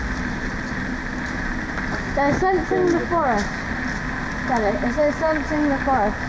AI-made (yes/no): no